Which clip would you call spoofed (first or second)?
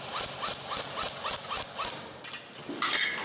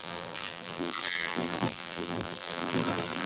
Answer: second